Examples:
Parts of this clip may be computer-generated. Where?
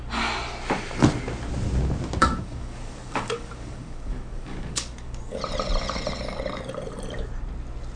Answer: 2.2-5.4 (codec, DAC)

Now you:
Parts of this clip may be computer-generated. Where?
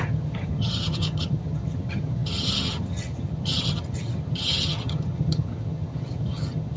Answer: 0.0-6.8 (vocoder, HiFi-GAN)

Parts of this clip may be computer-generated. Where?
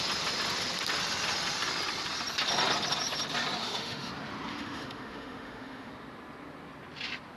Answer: 3.6-4.1 (autoencoder, DAC-VAE); 4.5-5.9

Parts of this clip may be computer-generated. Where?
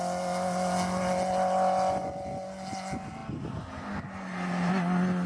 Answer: none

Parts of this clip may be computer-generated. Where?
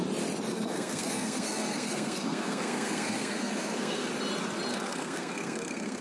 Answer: 0.5-4.1 (codec, SNAC); 4.7-6.0